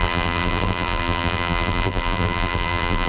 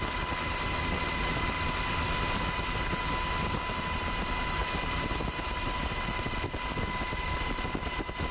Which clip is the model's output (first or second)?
first